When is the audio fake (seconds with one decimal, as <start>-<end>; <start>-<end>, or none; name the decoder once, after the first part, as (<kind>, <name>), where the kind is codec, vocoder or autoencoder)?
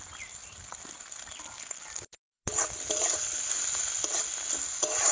none